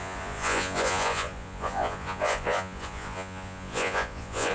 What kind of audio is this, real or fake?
fake